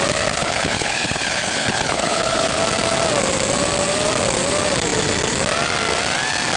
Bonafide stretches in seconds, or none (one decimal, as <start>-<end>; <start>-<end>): 0.0-0.4; 2.6-6.6